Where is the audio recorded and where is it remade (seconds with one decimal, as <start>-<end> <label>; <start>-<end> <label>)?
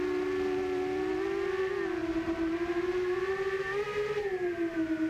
0.0-2.0 recorded; 2.0-5.1 remade